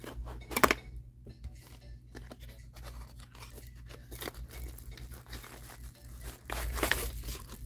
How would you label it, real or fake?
real